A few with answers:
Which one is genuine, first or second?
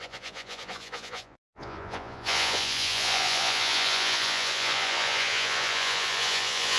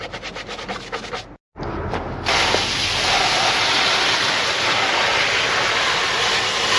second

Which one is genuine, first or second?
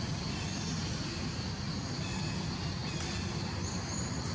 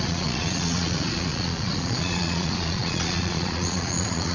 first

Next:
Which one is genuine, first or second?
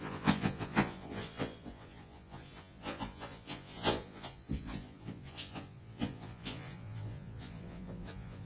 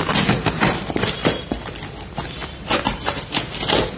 second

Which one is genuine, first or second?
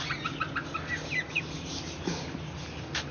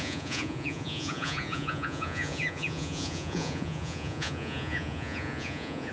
first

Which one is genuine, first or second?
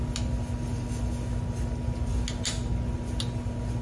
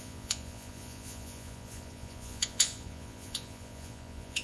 first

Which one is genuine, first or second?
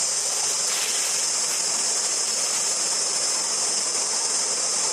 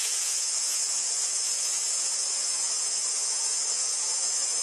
first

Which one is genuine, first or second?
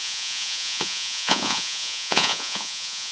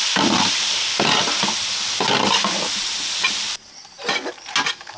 second